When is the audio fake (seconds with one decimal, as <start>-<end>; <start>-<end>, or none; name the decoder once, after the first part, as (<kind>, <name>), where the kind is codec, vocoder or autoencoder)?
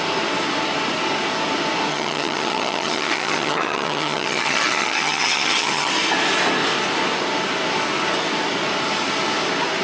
1.9-5.9 (vocoder, HiFi-GAN)